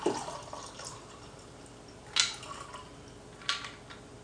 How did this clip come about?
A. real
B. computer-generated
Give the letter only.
A